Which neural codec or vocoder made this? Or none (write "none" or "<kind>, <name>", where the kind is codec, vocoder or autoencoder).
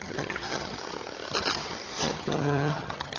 vocoder, HiFi-GAN